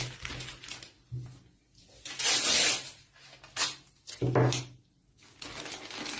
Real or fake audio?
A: real